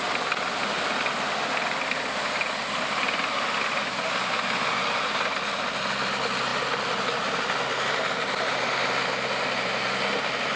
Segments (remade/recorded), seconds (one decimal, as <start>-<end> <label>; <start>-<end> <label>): 0.0-10.6 recorded